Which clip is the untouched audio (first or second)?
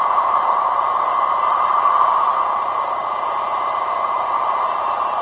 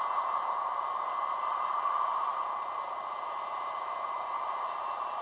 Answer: second